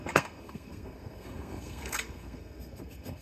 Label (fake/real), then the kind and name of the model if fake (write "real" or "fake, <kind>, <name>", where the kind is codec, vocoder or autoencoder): fake, codec, SNAC